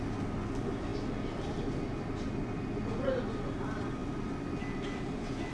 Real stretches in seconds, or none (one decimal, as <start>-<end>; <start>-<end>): 0.0-5.5